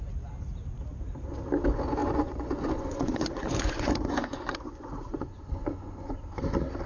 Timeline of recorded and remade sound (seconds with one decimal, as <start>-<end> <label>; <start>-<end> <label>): 0.0-2.0 recorded; 2.0-6.1 remade; 6.1-6.9 recorded